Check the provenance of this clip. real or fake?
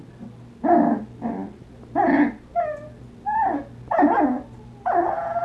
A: real